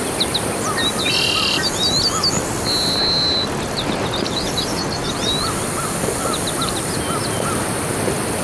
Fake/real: real